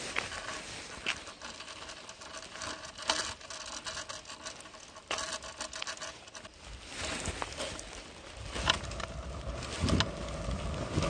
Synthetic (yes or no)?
no